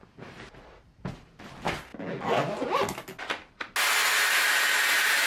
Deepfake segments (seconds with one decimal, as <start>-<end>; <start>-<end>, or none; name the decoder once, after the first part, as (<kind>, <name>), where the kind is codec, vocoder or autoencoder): none